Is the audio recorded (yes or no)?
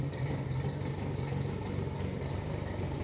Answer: yes